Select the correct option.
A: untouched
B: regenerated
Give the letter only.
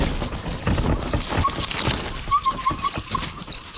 A